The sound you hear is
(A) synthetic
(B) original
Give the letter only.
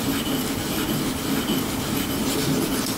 B